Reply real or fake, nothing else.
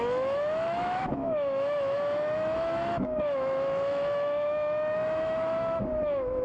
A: fake